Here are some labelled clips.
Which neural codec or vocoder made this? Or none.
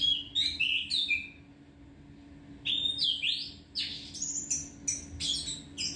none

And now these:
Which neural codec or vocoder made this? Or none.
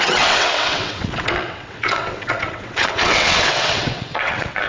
vocoder, WaveNeXt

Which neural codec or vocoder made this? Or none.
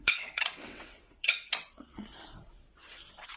vocoder, WaveNeXt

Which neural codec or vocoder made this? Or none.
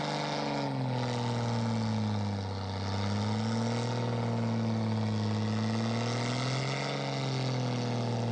none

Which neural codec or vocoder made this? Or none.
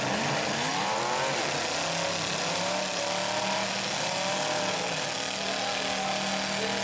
none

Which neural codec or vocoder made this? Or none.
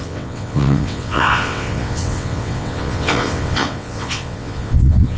vocoder, WaveNeXt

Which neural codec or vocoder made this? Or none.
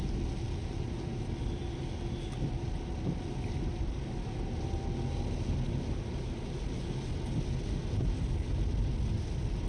none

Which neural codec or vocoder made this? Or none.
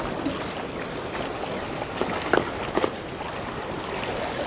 none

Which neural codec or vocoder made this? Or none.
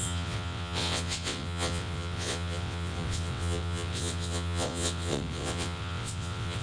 vocoder, WaveNeXt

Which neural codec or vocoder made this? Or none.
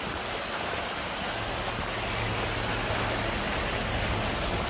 none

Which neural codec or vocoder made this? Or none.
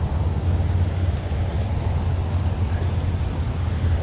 none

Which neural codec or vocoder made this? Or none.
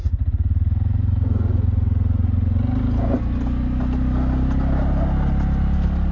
none